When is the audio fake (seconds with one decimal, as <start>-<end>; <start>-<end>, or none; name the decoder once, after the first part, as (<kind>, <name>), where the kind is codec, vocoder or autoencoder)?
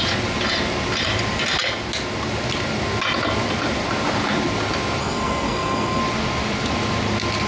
5.0-6.0 (codec, SNAC)